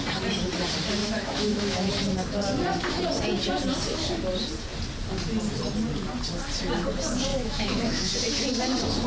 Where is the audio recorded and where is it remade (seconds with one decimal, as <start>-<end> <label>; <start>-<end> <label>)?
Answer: 0.0-1.0 recorded; 1.0-1.9 remade; 1.9-7.3 recorded; 7.3-8.1 remade; 8.1-9.1 recorded